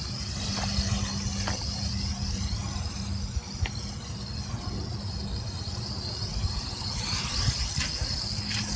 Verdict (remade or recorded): recorded